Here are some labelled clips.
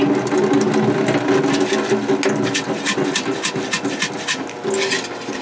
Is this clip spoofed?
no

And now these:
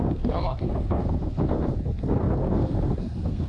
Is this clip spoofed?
yes